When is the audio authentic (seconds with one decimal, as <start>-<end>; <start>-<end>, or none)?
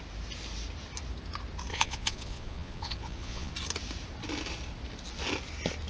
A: 0.0-1.7; 3.5-5.9